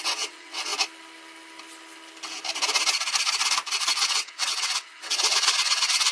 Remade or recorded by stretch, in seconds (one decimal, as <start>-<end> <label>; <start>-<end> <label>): 0.0-0.7 remade; 0.7-4.0 recorded; 4.0-6.1 remade